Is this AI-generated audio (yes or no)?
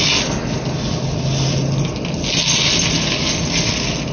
no